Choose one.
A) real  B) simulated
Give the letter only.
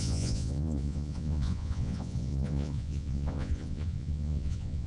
B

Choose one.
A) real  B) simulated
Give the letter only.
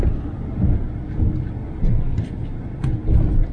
A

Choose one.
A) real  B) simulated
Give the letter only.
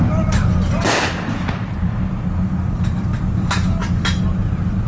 A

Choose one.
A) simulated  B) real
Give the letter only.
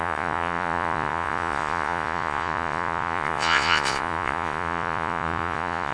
A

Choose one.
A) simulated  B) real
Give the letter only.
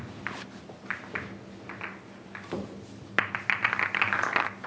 B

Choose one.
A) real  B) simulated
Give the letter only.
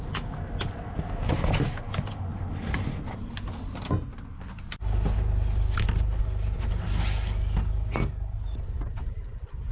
A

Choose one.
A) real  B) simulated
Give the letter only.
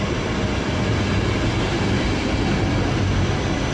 A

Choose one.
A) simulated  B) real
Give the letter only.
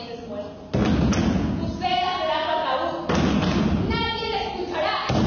B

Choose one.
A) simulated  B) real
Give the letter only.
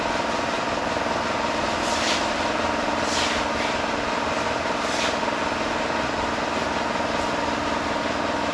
B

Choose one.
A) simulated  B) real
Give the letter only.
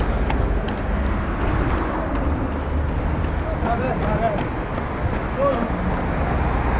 B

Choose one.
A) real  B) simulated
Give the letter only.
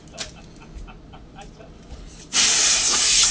A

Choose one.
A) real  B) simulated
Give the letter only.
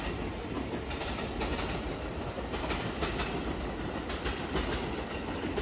A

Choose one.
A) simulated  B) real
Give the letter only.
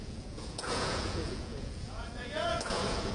A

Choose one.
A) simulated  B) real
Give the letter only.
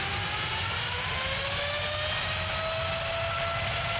B